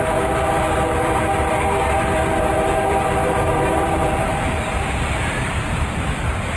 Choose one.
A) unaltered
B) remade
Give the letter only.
B